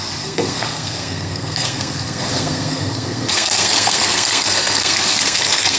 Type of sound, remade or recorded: remade